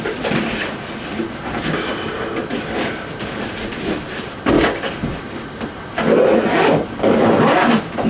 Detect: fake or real fake